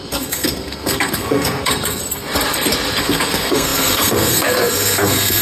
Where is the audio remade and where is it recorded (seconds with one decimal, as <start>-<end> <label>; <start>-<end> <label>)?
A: 0.0-2.0 remade; 2.0-3.0 recorded; 3.0-5.4 remade